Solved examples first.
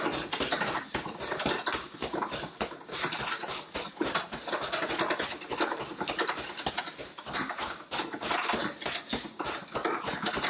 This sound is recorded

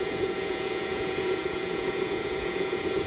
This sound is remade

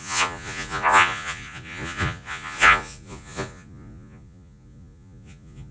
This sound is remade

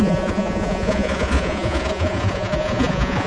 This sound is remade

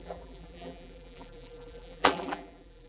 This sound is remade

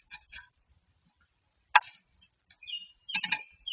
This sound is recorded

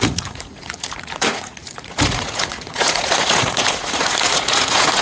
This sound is remade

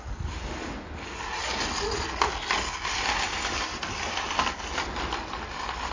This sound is recorded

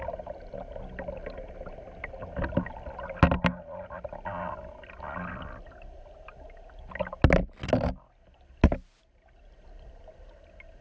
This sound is recorded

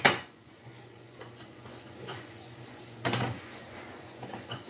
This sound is remade